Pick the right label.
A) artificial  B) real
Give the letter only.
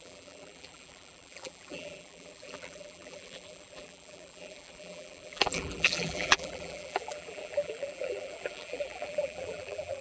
A